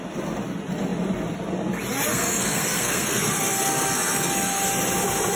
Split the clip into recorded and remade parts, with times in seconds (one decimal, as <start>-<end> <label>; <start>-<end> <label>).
0.0-2.1 recorded; 2.1-4.7 remade; 4.7-5.4 recorded